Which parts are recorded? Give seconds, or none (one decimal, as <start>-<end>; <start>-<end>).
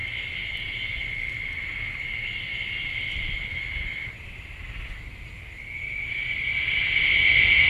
0.0-7.7